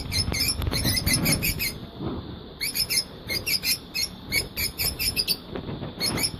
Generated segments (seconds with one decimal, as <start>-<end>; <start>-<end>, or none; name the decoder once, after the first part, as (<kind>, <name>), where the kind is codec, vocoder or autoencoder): 1.8-5.2 (vocoder, BigVGAN v2)